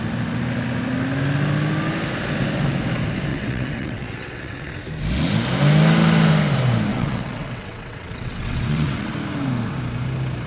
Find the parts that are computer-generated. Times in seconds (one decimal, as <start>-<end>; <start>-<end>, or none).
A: 3.3-4.7; 6.9-9.1